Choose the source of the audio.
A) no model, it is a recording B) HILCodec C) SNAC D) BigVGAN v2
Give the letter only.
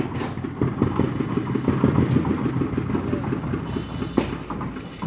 A